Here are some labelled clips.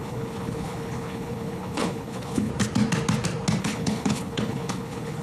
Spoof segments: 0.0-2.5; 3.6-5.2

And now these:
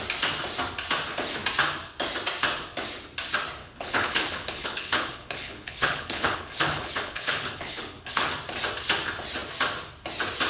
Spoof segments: 3.6-8.3

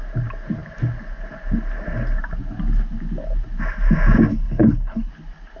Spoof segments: 4.3-5.1